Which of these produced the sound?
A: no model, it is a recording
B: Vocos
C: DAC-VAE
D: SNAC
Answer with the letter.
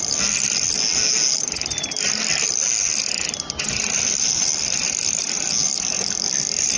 A